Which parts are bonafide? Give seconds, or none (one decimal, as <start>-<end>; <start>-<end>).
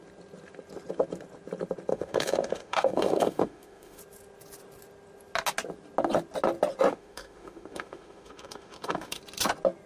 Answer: 0.0-1.9; 4.0-6.9; 9.2-9.9